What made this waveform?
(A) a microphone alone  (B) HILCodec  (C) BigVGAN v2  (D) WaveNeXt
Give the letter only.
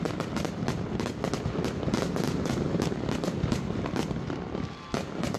A